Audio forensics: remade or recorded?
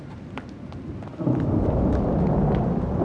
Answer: recorded